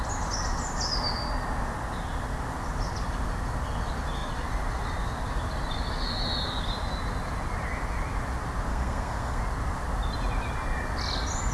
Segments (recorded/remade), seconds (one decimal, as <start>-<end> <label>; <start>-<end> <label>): 0.0-8.7 recorded; 8.7-9.4 remade; 9.4-11.5 recorded